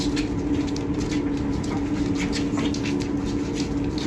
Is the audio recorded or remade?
recorded